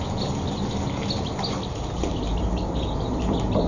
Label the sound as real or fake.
real